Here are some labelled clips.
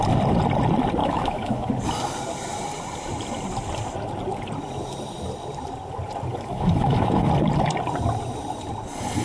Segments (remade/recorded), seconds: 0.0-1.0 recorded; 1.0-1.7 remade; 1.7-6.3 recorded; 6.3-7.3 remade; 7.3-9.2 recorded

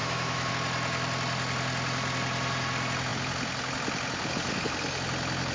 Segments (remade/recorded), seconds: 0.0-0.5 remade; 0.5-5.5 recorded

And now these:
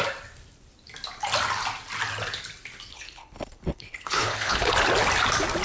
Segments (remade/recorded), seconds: 0.0-2.9 recorded; 2.9-4.7 remade; 4.7-5.6 recorded